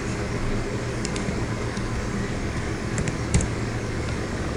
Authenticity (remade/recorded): remade